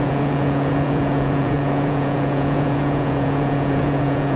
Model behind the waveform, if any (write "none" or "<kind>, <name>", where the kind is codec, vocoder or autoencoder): vocoder, Vocos